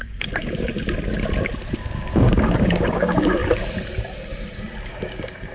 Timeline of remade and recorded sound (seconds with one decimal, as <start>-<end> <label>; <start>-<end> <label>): 0.0-0.7 remade; 0.7-1.7 recorded; 1.7-3.4 remade; 3.4-4.9 recorded; 4.9-5.5 remade